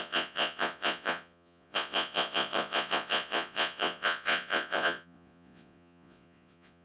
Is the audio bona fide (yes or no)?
no